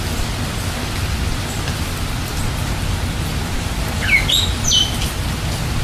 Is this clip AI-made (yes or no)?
no